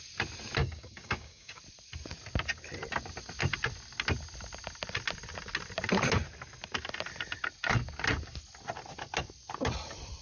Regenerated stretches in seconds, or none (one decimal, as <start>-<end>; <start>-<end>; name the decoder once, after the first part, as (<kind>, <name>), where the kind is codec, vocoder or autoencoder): 0.6-1.6 (codec, DAC)